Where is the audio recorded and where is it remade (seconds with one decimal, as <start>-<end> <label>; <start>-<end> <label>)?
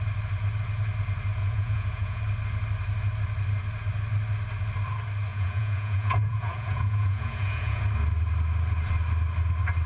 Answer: 0.0-1.4 recorded; 1.4-2.2 remade; 2.2-5.3 recorded; 5.3-7.8 remade; 7.8-9.9 recorded